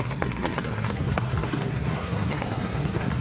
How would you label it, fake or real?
fake